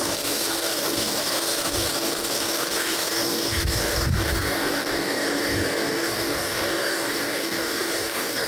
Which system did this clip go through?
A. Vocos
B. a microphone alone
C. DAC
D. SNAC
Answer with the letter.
C